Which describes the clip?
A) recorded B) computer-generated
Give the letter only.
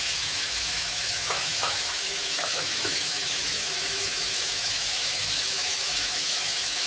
B